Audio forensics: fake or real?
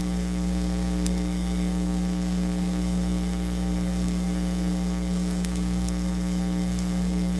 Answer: fake